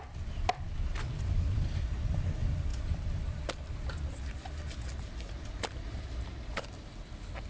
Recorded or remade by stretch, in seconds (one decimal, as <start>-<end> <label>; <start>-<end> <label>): 0.0-7.5 recorded

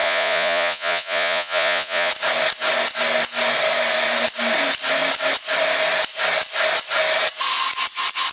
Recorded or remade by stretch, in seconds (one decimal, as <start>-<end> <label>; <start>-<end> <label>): 0.0-2.1 remade; 2.1-8.3 recorded

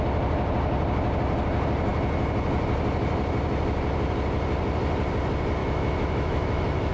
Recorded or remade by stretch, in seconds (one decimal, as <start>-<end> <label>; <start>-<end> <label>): 0.0-5.6 recorded; 5.6-6.9 remade

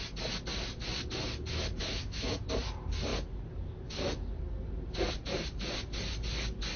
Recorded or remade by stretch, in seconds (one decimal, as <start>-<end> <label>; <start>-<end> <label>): 0.0-1.8 recorded; 1.8-2.4 remade; 2.4-6.8 recorded

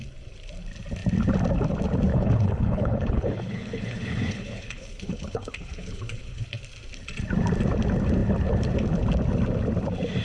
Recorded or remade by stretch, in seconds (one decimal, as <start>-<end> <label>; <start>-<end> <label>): 0.0-2.1 recorded; 2.1-6.6 remade; 6.6-10.2 recorded